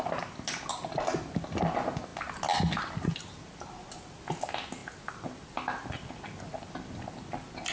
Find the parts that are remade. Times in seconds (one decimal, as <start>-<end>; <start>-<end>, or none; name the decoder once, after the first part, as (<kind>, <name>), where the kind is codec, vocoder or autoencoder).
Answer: none